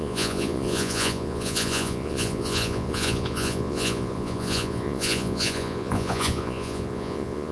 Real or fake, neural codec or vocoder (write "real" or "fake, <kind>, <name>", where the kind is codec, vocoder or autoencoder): fake, vocoder, Vocos